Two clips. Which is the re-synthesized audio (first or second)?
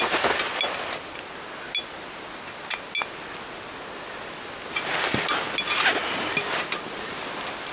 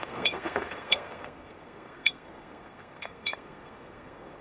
second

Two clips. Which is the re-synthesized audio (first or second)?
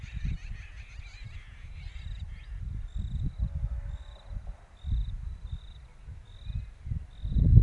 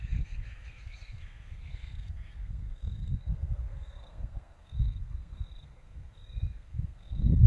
second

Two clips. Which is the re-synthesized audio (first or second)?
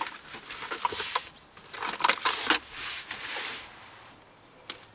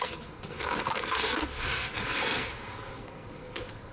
second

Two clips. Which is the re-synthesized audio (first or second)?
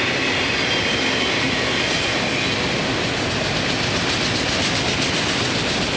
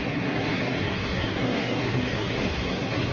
second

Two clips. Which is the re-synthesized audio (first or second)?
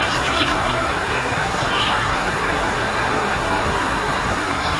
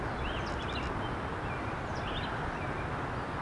first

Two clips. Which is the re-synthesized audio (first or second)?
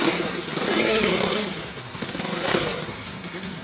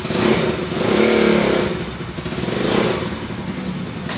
first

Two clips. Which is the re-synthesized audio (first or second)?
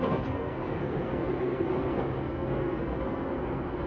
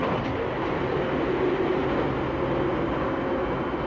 first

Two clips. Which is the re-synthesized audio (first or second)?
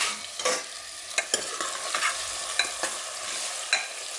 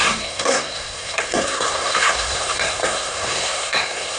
second